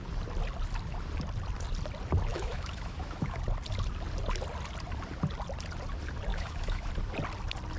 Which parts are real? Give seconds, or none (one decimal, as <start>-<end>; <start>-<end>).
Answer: 0.0-2.3; 3.4-6.3; 6.9-7.8